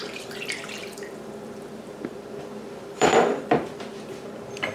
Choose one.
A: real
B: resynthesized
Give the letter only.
B